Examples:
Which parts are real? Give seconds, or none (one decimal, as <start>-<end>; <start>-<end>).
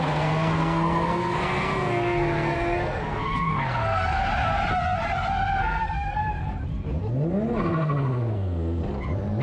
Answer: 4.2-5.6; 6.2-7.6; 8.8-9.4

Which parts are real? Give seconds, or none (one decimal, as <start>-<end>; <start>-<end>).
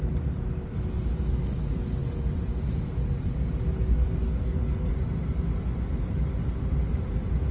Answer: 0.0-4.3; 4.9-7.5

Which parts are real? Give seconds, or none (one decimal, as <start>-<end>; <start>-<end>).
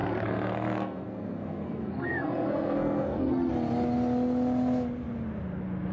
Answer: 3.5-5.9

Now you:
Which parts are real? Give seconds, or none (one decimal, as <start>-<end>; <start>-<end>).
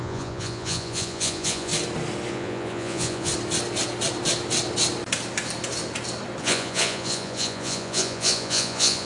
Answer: 1.7-2.3; 3.3-6.4